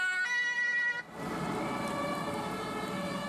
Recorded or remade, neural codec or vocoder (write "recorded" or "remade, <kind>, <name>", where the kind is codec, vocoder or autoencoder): recorded